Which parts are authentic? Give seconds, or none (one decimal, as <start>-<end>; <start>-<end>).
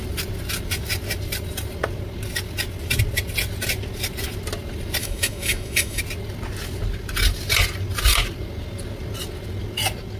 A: 0.0-5.0; 6.0-10.2